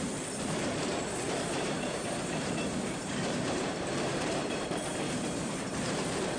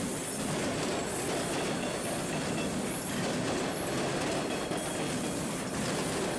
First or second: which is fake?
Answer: first